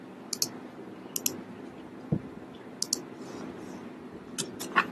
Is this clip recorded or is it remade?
recorded